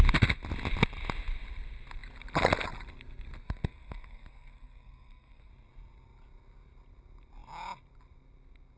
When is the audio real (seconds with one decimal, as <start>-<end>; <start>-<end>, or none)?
0.0-3.4; 5.5-8.8